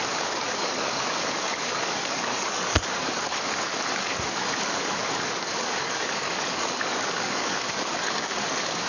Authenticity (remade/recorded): remade